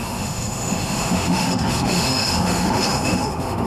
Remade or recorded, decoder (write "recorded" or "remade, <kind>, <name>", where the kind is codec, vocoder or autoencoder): remade, autoencoder, DAC-VAE